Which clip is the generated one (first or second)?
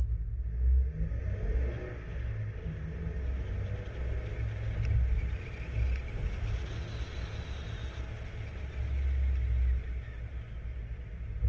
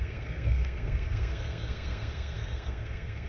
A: second